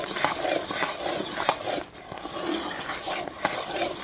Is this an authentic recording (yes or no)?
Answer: yes